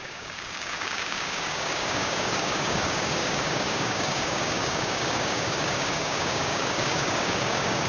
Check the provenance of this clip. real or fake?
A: fake